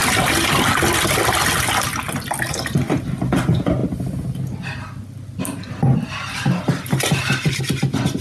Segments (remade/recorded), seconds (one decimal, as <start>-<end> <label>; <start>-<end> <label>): 0.0-0.8 remade; 0.8-8.2 recorded